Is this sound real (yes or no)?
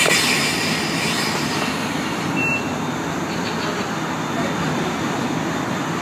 no